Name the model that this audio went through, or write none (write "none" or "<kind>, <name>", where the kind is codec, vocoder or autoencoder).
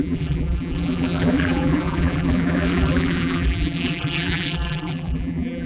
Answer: vocoder, BigVGAN v2